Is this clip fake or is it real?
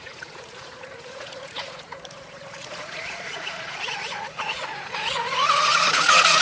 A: fake